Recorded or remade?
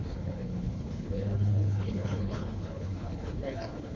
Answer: remade